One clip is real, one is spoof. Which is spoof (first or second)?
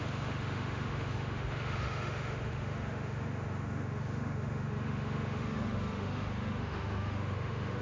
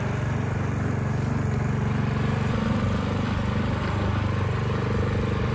first